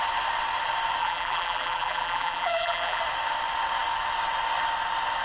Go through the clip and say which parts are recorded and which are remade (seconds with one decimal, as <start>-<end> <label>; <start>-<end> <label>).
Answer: 0.0-1.0 recorded; 1.0-3.0 remade; 3.0-5.2 recorded